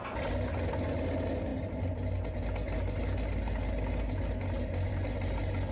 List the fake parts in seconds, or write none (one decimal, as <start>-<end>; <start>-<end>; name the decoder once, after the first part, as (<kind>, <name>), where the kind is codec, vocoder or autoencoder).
none